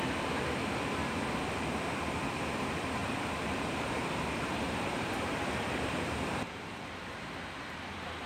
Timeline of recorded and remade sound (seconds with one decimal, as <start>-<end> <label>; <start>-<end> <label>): 0.0-3.0 recorded; 3.0-7.1 remade; 7.1-8.3 recorded